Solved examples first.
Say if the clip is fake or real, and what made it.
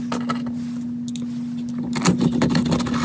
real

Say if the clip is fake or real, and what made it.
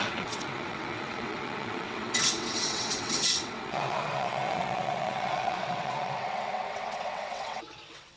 fake, vocoder, WaveNeXt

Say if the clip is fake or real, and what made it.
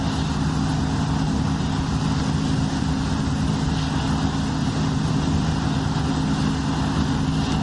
real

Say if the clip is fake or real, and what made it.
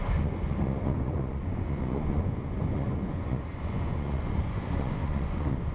fake, vocoder, Vocos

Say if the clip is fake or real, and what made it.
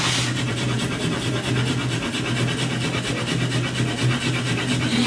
real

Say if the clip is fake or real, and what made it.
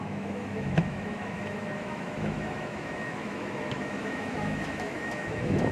fake, autoencoder, DAC-VAE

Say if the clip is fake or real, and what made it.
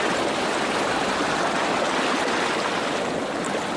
real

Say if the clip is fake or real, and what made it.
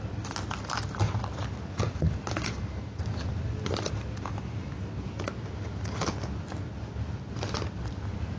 real